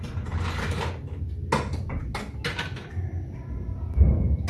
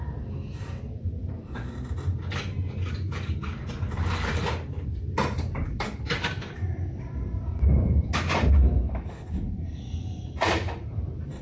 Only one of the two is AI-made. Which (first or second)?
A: second